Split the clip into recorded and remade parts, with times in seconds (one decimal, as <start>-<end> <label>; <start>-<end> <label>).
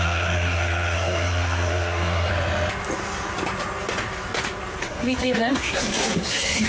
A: 0.0-2.3 remade; 2.3-4.8 recorded; 4.8-6.7 remade